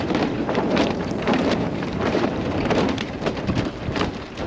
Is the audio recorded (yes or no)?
no